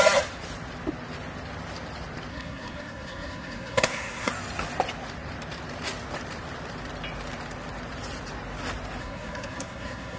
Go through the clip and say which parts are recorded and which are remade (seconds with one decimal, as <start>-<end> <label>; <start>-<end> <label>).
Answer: 0.0-2.3 recorded; 2.3-4.3 remade; 4.3-9.0 recorded; 9.0-10.2 remade